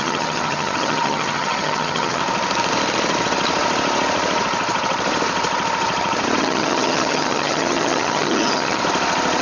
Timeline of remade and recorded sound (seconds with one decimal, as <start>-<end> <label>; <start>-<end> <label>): 0.0-2.2 remade; 2.2-6.4 recorded; 6.4-8.8 remade; 8.8-9.4 recorded